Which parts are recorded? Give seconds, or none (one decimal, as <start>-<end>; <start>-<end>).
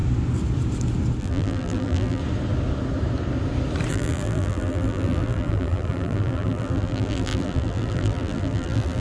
0.0-1.2; 2.2-3.9